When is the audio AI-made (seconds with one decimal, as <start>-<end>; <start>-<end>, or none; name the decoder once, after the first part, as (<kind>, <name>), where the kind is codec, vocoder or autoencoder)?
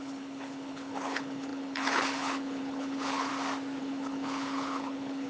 0.0-3.3 (codec, HILCodec); 3.8-5.3